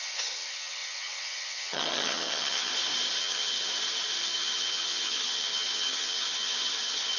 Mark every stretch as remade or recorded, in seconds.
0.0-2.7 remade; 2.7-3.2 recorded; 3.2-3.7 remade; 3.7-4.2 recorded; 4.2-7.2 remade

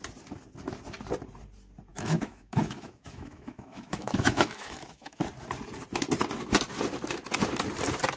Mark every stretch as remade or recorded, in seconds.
0.0-1.9 recorded; 1.9-5.2 remade; 5.2-8.2 recorded

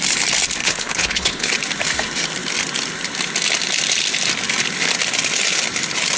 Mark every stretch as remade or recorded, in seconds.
0.0-0.6 recorded; 0.6-1.5 remade; 1.5-6.2 recorded

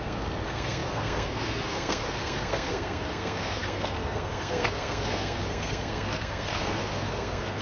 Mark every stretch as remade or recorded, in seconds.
0.0-7.6 remade

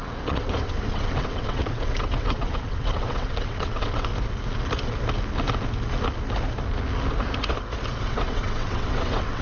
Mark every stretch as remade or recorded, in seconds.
0.0-4.1 remade; 4.1-8.0 recorded; 8.0-9.4 remade